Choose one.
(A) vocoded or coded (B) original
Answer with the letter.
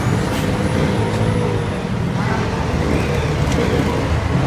B